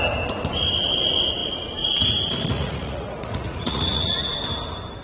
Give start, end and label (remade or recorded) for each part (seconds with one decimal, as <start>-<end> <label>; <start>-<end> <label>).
0.0-2.5 recorded; 2.5-4.3 remade; 4.3-5.0 recorded